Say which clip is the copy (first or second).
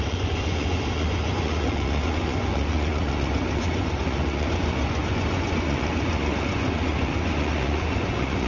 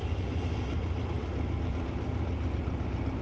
first